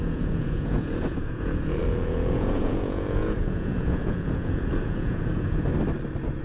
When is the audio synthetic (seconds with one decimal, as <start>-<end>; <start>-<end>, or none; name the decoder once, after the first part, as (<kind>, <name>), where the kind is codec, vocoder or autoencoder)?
0.0-5.7 (vocoder, Vocos)